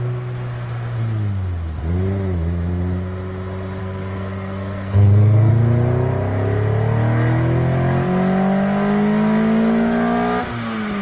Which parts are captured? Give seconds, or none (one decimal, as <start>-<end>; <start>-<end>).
0.0-3.8; 5.5-11.0